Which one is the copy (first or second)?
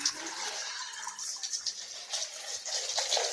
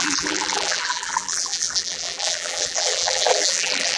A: second